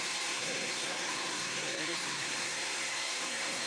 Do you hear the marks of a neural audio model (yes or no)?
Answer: yes